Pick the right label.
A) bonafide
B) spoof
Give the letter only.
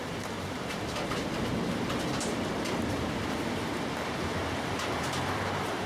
B